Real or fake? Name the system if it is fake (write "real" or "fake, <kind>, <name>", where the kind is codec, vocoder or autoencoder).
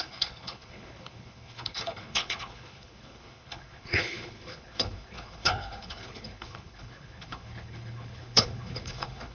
fake, codec, HILCodec